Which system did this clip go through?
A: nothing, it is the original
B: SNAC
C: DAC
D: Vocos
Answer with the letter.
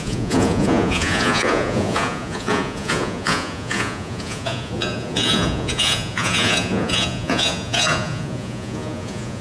D